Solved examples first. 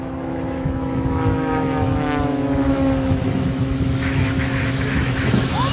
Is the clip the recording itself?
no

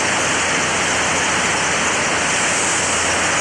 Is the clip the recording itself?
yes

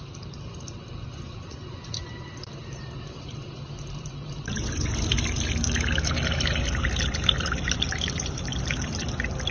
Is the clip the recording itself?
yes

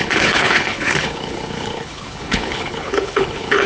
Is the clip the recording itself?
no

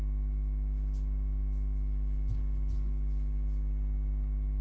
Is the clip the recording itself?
yes